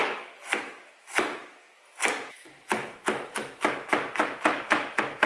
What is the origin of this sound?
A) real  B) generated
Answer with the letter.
B